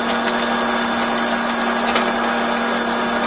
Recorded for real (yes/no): yes